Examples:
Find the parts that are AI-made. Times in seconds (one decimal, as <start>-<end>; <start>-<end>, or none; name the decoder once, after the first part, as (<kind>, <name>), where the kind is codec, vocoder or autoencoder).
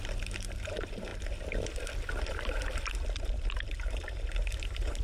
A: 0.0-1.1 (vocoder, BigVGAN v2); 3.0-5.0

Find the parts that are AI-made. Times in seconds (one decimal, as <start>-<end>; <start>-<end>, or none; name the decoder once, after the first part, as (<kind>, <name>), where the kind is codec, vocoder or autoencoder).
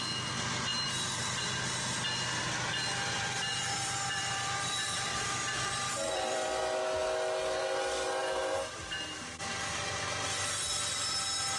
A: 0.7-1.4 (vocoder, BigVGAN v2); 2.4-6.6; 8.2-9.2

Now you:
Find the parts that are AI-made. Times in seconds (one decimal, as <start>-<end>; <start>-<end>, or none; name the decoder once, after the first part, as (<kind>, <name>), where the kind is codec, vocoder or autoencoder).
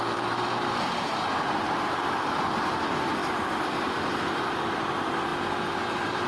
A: 0.0-6.3 (vocoder, BigVGAN v2)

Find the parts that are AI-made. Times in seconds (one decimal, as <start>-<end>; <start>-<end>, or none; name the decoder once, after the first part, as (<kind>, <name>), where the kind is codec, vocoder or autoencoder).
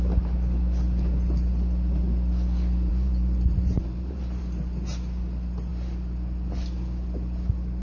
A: 2.9-4.4 (vocoder, BigVGAN v2)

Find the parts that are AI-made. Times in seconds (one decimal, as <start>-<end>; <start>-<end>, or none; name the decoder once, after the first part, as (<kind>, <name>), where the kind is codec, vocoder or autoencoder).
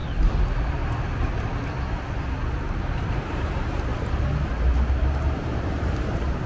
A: 2.6-3.9 (vocoder, BigVGAN v2); 4.9-6.5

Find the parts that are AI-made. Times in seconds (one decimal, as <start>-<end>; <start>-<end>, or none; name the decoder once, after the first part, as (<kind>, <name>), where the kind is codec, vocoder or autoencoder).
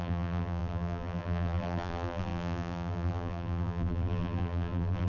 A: 0.0-5.1 (vocoder, BigVGAN v2)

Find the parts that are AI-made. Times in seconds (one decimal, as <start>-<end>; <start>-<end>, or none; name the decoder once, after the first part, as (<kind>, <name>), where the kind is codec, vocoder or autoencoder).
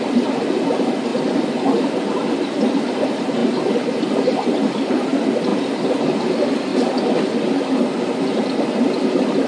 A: 0.0-1.1 (vocoder, BigVGAN v2); 1.8-3.4; 3.9-5.5; 6.3-6.7; 8.3-9.5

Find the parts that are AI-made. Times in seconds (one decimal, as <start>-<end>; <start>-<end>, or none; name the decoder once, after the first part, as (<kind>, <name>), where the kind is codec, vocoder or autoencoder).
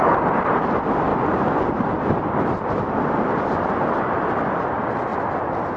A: 1.1-4.6 (vocoder, BigVGAN v2)